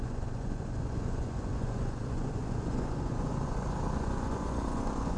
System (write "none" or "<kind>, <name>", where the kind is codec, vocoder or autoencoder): vocoder, Vocos